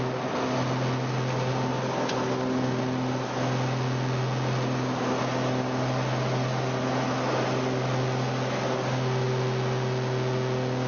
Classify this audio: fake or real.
real